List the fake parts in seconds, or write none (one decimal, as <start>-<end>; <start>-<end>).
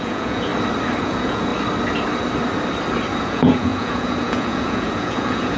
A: 0.0-0.5; 1.0-1.5; 3.2-5.6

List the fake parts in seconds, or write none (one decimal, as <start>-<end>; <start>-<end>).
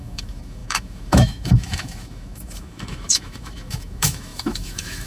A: 0.0-5.1